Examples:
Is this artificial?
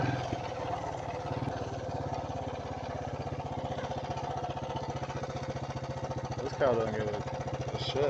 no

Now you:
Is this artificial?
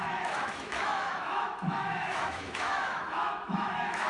yes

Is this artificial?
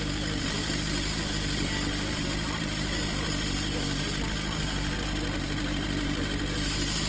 no